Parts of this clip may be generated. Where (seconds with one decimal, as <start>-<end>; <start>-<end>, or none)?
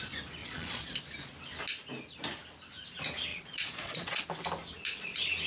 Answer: 0.4-1.0; 3.3-4.2